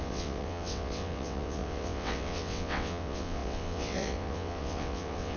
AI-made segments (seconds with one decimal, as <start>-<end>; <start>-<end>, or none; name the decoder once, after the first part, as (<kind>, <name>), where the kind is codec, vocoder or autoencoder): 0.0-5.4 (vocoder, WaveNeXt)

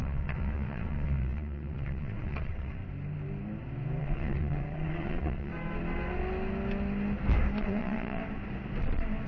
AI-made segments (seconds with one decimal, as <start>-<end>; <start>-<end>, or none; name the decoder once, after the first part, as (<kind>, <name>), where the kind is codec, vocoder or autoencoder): 0.0-2.8 (vocoder, WaveNeXt); 4.0-5.5; 7.6-8.2

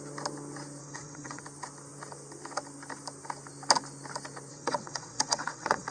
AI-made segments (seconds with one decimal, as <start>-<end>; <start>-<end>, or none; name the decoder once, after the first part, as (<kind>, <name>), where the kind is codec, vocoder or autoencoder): 0.8-1.4 (vocoder, WaveNeXt); 4.5-5.9

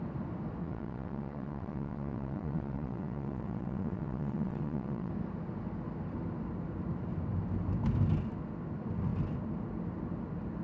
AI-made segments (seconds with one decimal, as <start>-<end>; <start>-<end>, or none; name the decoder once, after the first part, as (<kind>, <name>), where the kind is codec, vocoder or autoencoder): 0.6-5.1 (vocoder, WaveNeXt)

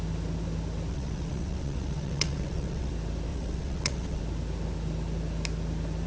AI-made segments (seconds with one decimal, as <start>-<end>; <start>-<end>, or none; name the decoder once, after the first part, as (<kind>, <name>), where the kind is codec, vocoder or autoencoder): 0.9-2.9 (vocoder, WaveNeXt); 3.3-4.2

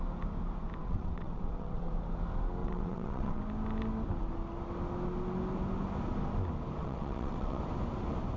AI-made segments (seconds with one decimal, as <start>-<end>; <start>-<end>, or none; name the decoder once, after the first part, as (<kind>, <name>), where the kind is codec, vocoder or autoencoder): 0.8-1.9 (vocoder, WaveNeXt); 2.6-3.4; 6.8-7.6